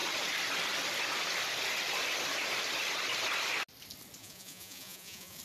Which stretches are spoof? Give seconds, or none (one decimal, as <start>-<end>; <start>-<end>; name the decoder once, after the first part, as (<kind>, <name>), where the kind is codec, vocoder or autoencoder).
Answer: 4.2-5.4 (vocoder, Vocos)